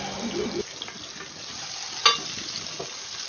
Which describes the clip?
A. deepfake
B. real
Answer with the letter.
B